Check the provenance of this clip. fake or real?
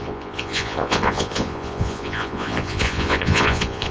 fake